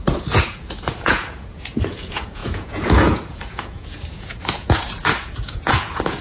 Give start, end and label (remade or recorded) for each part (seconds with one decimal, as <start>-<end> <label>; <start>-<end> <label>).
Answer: 0.0-6.2 remade